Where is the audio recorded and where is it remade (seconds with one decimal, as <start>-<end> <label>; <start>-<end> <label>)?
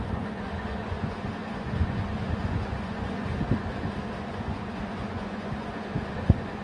0.0-3.3 remade; 3.3-4.2 recorded; 4.2-6.6 remade